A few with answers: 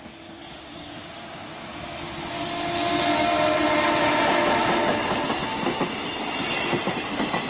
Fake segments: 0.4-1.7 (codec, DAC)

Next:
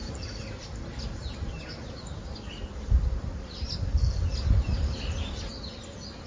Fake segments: none

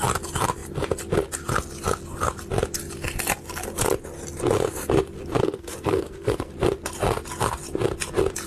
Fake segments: 5.4-6.5 (codec, SNAC)

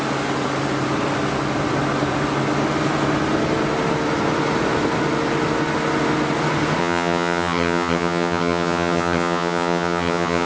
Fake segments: 6.8-10.5 (vocoder, HiFi-GAN)

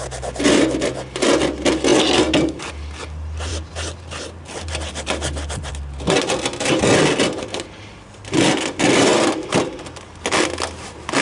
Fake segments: none

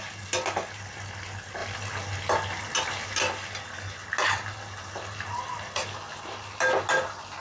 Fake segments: none

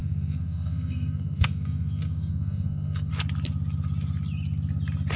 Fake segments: 0.0-3.1 (codec, SNAC)

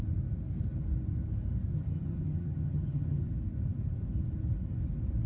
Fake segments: 1.7-3.3 (vocoder, HiFi-GAN)